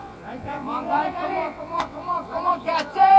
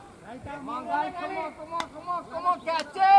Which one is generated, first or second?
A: first